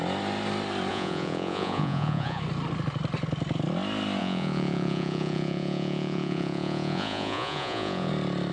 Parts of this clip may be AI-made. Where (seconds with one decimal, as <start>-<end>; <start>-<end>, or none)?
0.9-2.4; 4.2-8.1